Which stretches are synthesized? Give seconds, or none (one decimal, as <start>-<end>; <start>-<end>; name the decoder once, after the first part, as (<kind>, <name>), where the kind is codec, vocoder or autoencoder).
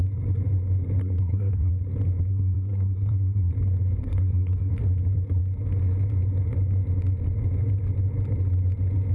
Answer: 1.0-1.7 (codec, SNAC); 2.3-3.5; 4.0-4.7